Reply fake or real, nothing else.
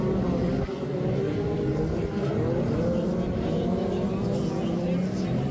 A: real